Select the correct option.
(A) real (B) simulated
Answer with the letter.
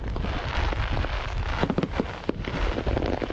A